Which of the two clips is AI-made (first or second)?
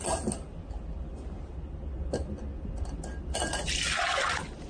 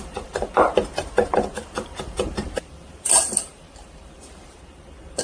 second